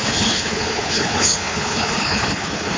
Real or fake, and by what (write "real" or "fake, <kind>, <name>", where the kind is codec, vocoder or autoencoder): fake, codec, HILCodec